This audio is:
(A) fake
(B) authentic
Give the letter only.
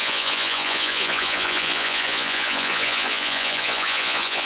A